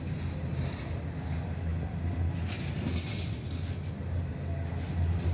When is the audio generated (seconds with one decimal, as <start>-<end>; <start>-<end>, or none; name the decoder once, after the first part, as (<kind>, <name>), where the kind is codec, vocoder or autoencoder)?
none